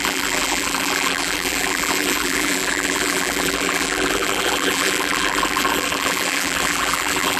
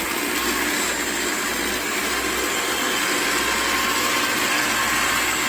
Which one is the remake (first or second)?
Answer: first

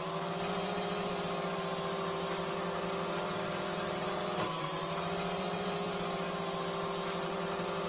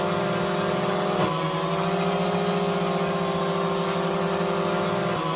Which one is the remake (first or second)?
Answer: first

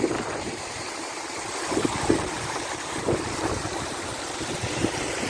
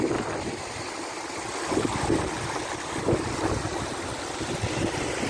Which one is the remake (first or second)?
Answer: first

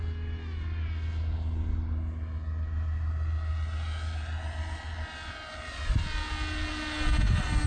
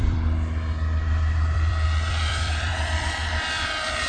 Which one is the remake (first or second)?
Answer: second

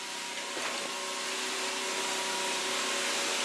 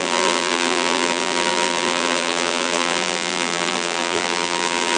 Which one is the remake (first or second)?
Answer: second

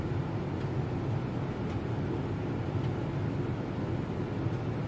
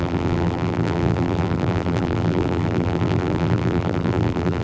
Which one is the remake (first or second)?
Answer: second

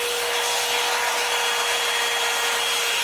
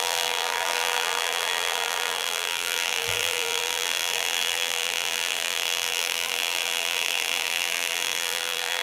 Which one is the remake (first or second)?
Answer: second